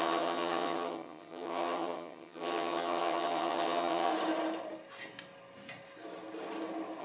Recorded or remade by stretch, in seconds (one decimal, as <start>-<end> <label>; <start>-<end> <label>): 0.0-4.1 remade; 4.1-7.0 recorded